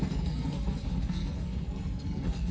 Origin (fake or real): fake